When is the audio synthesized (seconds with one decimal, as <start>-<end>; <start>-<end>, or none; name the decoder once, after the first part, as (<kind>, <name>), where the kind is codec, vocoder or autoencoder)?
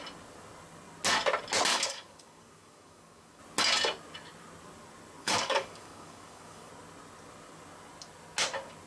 1.7-3.4 (codec, DAC); 5.2-6.7